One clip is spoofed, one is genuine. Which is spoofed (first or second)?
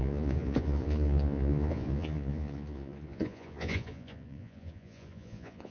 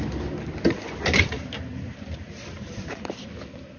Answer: first